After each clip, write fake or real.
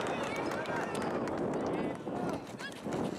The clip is real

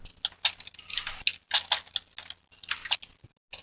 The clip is real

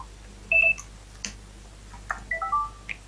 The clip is real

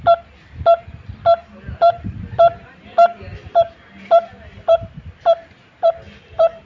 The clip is real